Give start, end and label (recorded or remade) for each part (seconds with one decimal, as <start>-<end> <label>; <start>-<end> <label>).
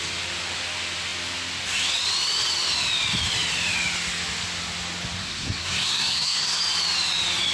0.0-5.2 recorded; 5.2-6.6 remade; 6.6-7.5 recorded